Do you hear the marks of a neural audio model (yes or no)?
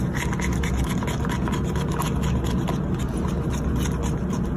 no